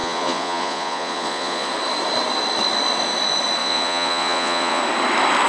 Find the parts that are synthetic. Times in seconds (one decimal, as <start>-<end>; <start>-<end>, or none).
0.0-1.7; 3.6-4.8